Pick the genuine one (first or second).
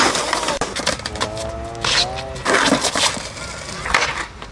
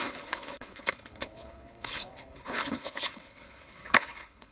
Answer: first